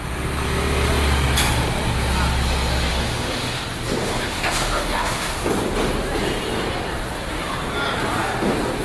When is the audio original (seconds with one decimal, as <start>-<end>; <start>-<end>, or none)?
0.0-2.9; 3.6-4.0; 5.5-8.8